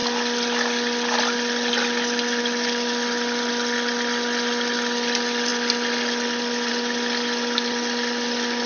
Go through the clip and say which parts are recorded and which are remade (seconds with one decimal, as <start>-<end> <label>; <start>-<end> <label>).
0.0-8.7 recorded